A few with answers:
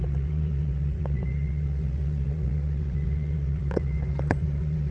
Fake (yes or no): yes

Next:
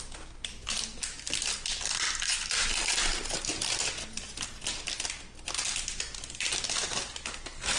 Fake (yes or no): no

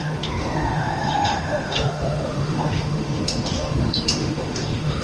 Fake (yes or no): yes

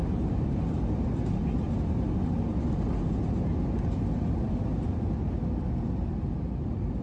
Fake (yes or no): no